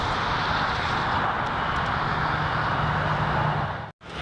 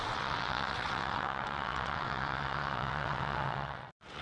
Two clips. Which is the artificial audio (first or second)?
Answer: second